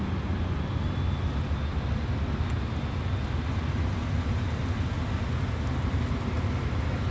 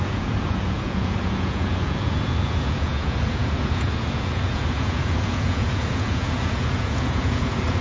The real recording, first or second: first